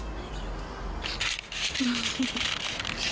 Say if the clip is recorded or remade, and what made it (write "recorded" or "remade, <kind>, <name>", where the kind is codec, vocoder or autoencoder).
recorded